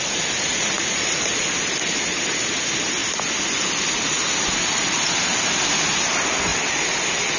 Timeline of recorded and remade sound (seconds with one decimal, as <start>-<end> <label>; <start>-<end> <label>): 0.0-0.5 recorded; 0.5-1.5 remade; 1.5-7.4 recorded